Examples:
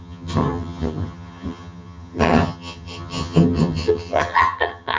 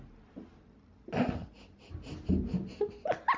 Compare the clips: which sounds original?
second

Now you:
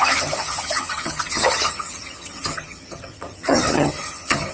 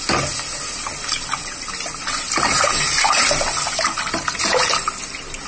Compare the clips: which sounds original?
second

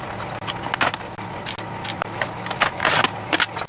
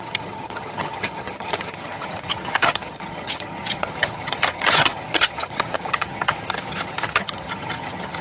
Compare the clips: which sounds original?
first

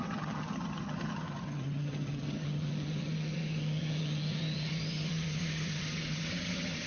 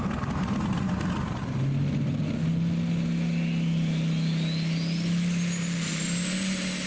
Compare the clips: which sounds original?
second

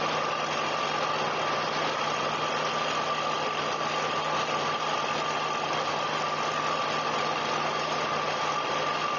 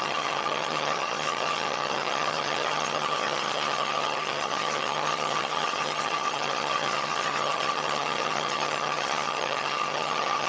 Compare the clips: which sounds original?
first